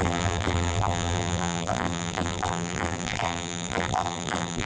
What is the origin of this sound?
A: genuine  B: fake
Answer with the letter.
B